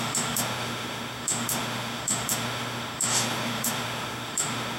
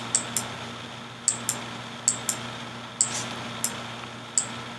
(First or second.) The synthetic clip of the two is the first